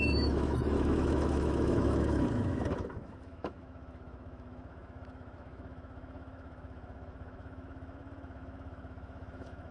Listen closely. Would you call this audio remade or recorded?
remade